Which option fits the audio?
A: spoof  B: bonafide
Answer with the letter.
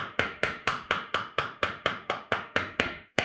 A